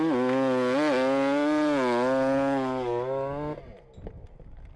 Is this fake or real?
real